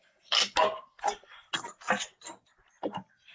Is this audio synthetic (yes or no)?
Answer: no